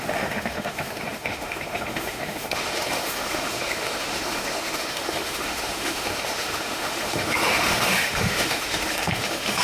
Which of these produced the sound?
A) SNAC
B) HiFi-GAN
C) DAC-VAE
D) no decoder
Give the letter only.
C